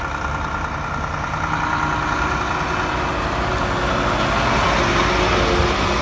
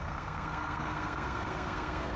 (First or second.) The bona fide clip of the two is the first